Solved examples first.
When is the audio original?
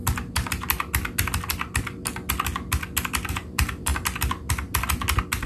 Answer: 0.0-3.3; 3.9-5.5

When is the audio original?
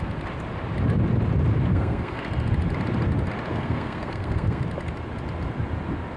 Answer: 0.0-1.7; 2.2-3.5; 4.6-6.2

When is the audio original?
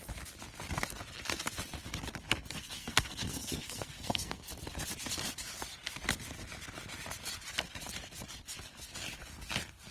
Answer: 0.0-2.6; 4.5-9.9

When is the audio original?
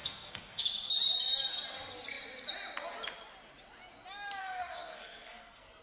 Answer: 0.6-4.4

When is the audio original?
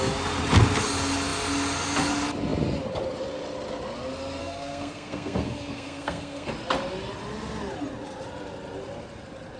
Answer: 0.0-4.4; 6.5-9.6